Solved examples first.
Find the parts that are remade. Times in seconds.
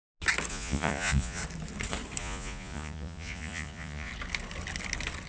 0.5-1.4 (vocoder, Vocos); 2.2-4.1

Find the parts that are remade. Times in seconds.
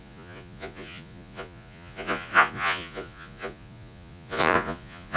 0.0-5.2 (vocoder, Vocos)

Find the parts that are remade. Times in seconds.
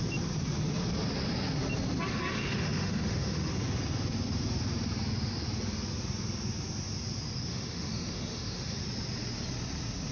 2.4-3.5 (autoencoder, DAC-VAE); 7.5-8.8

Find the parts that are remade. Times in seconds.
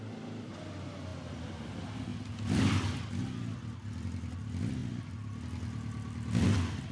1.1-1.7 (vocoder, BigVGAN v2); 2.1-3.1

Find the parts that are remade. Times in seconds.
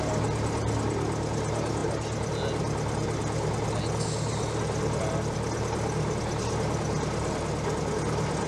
none